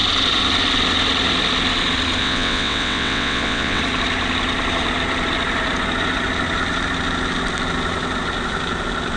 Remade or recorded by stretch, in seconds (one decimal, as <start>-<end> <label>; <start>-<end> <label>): 0.0-2.2 recorded; 2.2-3.8 remade; 3.8-9.2 recorded